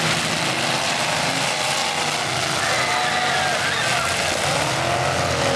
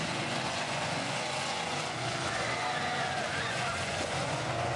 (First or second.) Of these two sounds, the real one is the first